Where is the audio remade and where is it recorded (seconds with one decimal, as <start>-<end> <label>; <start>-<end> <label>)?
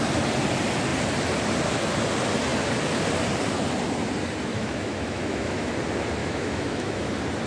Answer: 0.0-4.5 recorded; 4.5-5.7 remade; 5.7-6.2 recorded; 6.2-7.1 remade; 7.1-7.5 recorded